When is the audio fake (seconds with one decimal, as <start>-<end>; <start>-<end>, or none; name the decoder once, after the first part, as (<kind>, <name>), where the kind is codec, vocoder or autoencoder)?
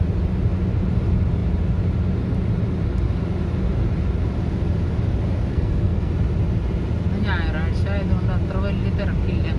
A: 5.5-6.1 (codec, SNAC)